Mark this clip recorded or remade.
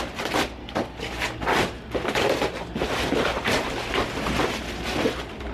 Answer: recorded